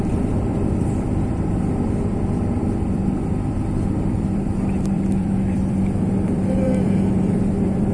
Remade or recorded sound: remade